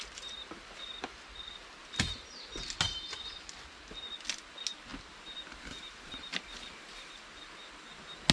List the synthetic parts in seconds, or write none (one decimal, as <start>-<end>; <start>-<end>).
none